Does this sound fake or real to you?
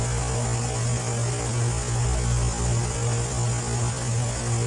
real